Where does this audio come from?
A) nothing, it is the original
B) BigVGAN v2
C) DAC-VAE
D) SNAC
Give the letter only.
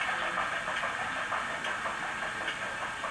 A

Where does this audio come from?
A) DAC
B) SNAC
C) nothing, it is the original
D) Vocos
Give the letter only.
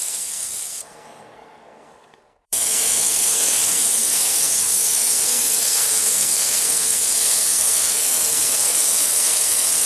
B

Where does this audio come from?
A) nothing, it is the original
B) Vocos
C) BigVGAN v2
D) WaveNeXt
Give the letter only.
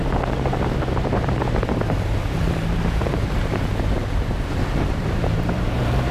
C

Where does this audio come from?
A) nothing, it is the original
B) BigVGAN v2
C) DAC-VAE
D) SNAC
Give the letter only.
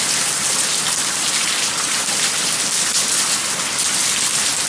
A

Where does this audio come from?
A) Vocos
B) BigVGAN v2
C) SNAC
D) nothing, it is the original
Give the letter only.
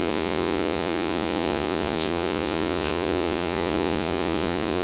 A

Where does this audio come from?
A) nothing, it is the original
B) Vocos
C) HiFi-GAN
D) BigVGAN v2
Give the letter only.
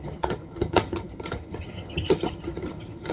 C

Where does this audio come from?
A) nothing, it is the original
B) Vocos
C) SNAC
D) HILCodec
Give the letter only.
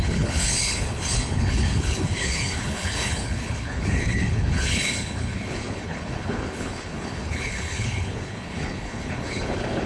D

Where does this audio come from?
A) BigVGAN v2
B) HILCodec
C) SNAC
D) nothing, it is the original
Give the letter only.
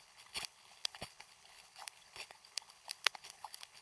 B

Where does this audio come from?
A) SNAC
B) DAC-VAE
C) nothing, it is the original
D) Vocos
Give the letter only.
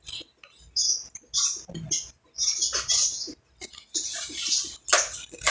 C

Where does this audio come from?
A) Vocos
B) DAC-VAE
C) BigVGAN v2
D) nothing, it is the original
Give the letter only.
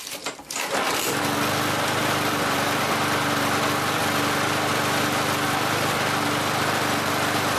C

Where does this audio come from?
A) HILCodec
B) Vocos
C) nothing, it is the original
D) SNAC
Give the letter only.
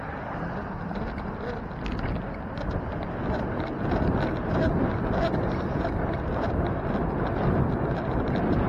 C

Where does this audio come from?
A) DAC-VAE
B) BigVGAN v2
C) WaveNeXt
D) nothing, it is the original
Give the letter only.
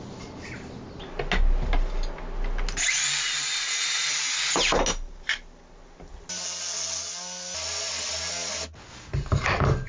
D